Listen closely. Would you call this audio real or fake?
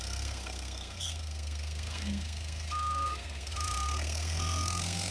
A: fake